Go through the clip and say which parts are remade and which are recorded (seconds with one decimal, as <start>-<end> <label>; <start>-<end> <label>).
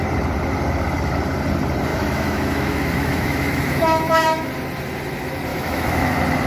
0.0-1.9 recorded; 1.9-4.5 remade; 4.5-5.5 recorded; 5.5-6.1 remade; 6.1-6.5 recorded